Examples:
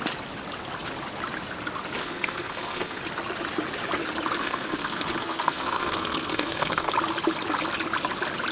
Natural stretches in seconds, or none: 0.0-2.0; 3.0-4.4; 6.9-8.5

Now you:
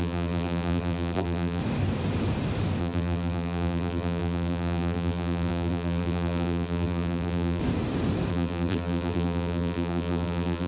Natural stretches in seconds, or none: 1.6-2.8; 7.6-8.3

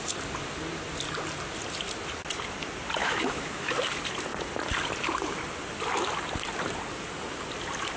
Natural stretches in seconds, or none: 0.0-3.0; 3.7-8.0

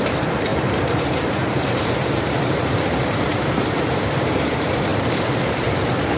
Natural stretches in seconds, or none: 4.9-5.5